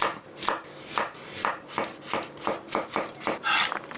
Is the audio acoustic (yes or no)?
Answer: yes